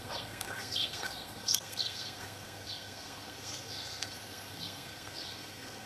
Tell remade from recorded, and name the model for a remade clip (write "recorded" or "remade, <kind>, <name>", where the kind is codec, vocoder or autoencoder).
remade, codec, SNAC